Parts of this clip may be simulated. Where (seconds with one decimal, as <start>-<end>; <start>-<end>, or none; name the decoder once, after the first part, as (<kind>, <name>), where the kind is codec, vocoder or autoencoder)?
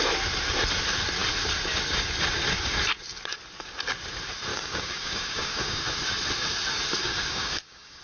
4.5-5.8 (codec, DAC); 7.0-8.0